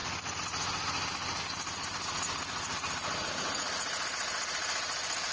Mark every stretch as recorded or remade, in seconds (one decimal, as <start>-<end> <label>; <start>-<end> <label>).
0.0-5.3 recorded